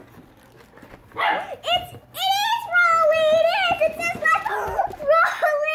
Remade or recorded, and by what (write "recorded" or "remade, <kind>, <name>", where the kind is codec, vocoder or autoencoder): recorded